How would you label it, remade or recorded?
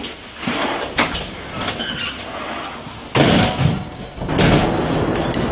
recorded